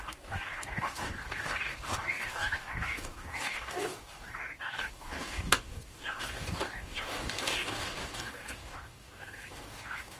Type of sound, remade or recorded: remade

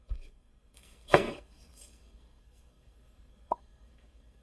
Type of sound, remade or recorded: remade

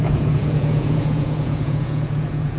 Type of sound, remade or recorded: remade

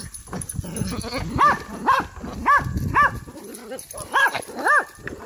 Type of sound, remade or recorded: recorded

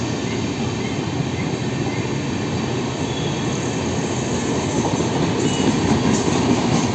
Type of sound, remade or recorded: recorded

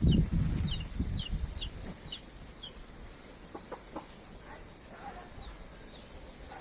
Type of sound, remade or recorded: recorded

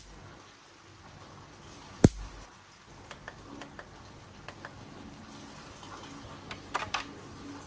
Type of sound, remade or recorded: recorded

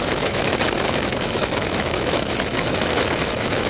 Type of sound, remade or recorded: remade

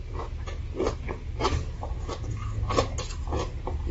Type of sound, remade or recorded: recorded